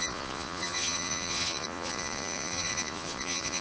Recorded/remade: remade